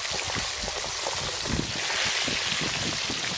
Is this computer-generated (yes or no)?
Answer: no